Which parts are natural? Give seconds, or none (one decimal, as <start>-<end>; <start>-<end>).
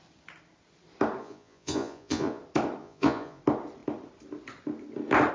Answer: 0.0-1.2; 2.4-2.8; 3.4-5.3